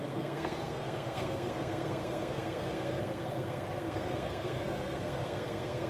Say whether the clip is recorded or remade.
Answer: remade